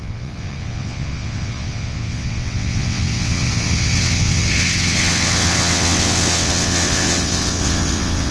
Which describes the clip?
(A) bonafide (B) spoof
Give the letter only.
B